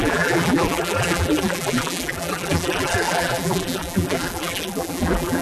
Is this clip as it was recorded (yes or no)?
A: no